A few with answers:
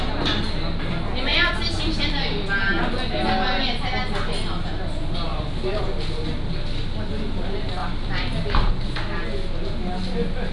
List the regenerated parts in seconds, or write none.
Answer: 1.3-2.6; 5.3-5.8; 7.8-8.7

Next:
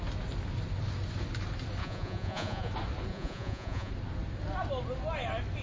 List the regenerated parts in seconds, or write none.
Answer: 1.8-2.7; 3.1-3.9

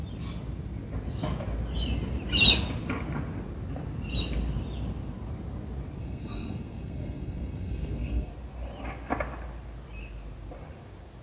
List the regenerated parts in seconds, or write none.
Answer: 6.0-8.3

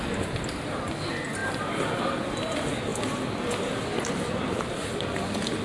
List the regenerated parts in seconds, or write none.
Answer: none

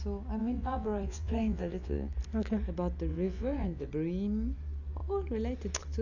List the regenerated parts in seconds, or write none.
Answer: 0.4-2.1; 3.1-3.9

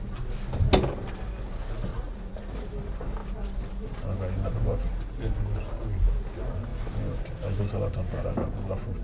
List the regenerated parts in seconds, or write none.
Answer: 1.9-2.5

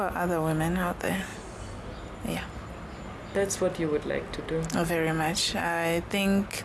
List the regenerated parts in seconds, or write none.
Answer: none

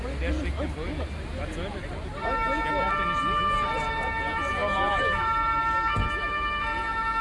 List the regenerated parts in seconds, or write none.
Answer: none